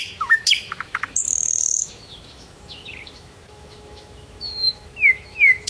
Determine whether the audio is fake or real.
fake